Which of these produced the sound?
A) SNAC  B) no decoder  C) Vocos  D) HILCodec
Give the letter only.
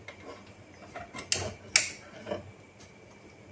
B